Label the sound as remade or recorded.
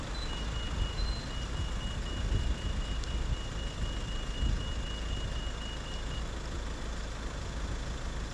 recorded